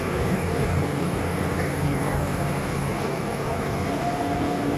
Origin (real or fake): fake